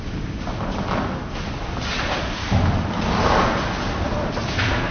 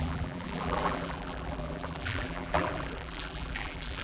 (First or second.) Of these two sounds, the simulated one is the second